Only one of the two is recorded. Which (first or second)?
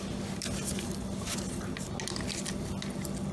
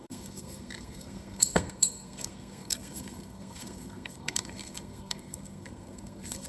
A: first